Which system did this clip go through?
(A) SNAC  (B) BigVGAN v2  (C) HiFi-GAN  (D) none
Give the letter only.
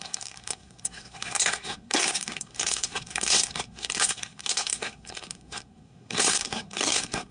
A